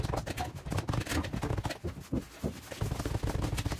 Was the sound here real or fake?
real